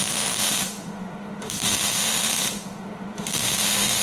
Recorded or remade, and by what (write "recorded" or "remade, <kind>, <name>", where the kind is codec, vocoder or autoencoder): remade, autoencoder, DAC-VAE